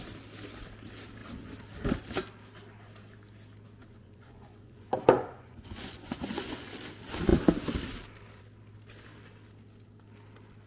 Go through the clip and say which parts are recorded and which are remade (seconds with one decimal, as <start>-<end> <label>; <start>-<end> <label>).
0.0-3.8 recorded; 3.8-6.7 remade; 6.7-10.7 recorded